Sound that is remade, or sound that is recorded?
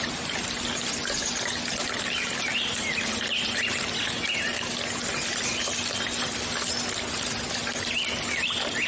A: recorded